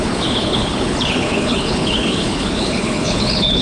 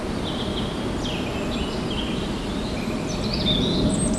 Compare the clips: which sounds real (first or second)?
second